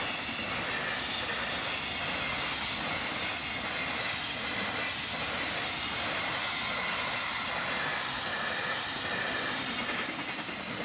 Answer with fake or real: real